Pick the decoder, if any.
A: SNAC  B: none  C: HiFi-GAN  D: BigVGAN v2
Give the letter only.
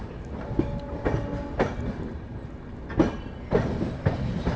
B